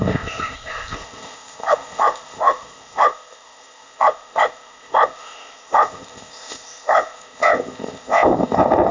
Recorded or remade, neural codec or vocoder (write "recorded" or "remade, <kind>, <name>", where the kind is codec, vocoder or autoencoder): remade, codec, ZipCodec